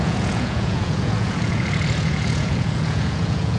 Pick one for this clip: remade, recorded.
remade